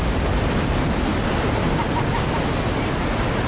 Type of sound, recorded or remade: recorded